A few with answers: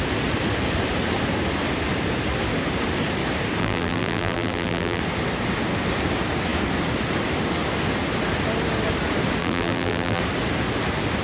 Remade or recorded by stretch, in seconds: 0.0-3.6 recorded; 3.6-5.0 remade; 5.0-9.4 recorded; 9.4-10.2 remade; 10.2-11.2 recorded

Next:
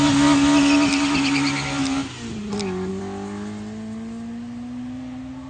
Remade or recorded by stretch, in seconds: 0.0-5.5 recorded

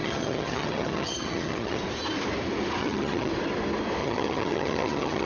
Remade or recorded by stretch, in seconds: 0.0-1.8 remade; 1.8-2.8 recorded; 2.8-3.3 remade; 3.3-4.0 recorded; 4.0-5.3 remade

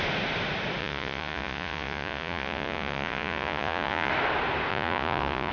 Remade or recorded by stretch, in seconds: 0.0-0.8 recorded; 0.8-4.1 remade; 4.1-4.7 recorded; 4.7-5.5 remade